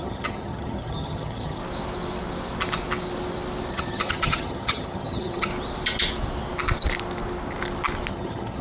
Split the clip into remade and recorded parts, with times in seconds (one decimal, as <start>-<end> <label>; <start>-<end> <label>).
0.0-1.6 remade; 1.6-3.7 recorded; 3.7-5.5 remade; 5.5-8.1 recorded; 8.1-8.6 remade